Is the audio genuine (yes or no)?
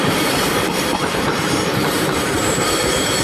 no